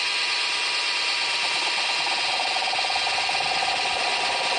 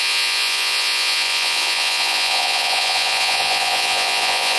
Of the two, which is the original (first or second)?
first